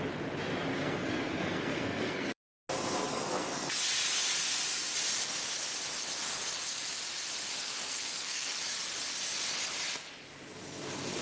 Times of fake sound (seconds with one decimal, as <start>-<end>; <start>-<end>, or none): 0.7-2.5; 3.1-3.7; 7.5-8.6